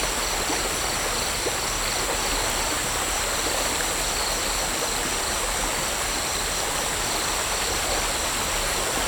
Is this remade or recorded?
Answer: recorded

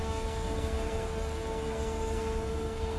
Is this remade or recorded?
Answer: remade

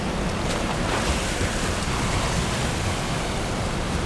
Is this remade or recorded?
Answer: recorded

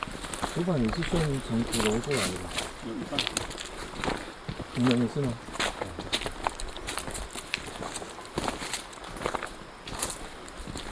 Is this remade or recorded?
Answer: recorded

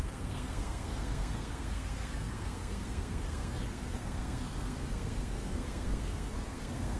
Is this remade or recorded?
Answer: remade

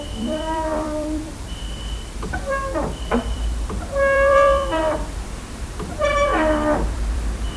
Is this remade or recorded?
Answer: remade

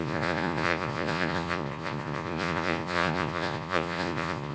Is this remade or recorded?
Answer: remade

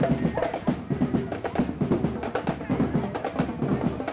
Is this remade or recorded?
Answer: recorded